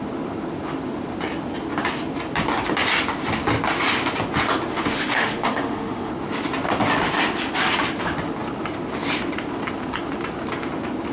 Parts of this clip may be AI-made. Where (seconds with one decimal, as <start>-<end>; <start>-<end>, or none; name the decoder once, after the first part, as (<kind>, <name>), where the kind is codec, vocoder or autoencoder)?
4.7-6.1 (autoencoder, DAC-VAE)